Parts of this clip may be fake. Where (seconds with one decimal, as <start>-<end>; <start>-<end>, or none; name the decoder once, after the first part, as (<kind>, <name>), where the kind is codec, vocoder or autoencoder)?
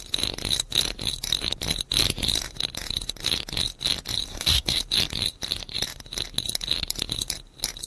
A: 4.3-4.8 (codec, SNAC)